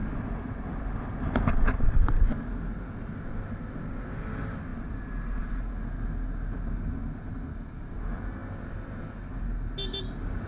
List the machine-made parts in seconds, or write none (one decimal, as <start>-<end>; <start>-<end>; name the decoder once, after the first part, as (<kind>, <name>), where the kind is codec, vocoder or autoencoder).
none